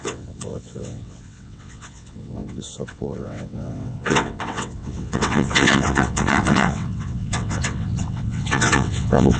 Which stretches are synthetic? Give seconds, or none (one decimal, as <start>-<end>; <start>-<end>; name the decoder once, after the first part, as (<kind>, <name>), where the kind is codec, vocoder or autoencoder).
0.0-9.4 (vocoder, WaveNeXt)